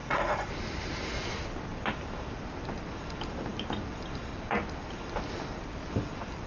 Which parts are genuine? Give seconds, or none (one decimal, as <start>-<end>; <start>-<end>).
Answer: 0.5-6.5